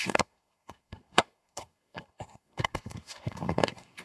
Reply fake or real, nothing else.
fake